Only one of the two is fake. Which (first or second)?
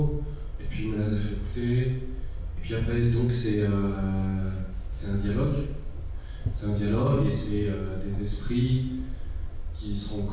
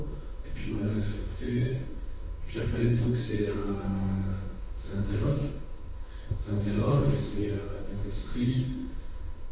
second